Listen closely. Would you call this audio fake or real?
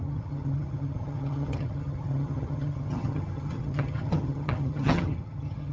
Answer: fake